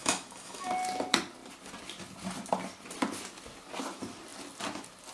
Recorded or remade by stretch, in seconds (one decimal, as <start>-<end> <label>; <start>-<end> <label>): 0.0-0.7 remade; 0.7-5.1 recorded